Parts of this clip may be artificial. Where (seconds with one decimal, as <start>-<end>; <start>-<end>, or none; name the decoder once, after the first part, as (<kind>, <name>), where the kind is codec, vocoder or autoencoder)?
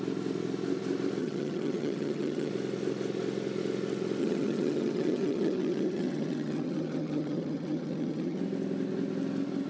1.2-2.5 (vocoder, HiFi-GAN); 4.2-8.4